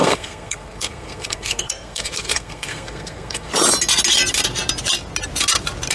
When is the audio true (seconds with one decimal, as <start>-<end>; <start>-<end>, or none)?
3.5-5.9